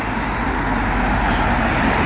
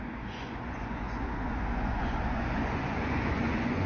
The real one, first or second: first